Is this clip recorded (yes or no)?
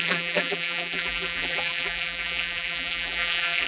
no